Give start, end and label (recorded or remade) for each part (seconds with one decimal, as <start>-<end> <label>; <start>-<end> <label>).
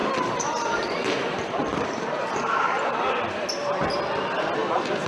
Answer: 0.0-3.1 remade; 3.1-5.1 recorded